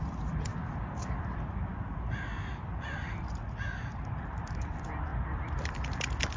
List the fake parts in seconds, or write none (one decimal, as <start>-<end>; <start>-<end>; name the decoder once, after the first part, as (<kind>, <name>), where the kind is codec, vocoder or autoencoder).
0.0-0.5 (vocoder, BigVGAN v2); 1.2-1.7; 2.6-6.4